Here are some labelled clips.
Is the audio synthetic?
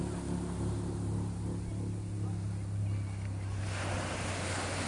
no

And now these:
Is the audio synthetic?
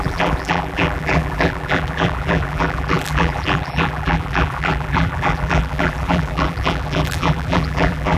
yes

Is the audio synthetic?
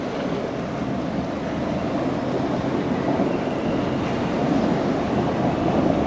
no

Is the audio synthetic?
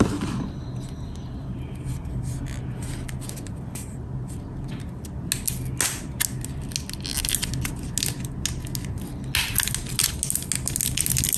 no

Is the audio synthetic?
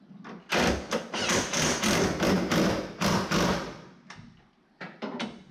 no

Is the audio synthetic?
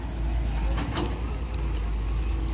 no